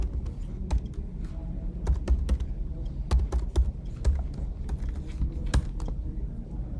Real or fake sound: real